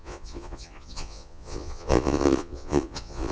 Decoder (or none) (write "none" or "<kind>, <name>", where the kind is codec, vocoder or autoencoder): vocoder, Vocos